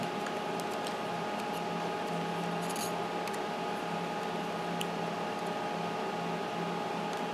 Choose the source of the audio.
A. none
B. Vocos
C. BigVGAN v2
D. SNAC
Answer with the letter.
A